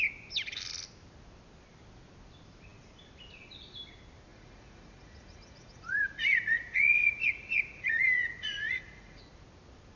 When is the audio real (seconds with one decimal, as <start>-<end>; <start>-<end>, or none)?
0.0-4.3; 9.2-10.0